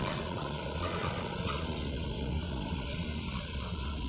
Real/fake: fake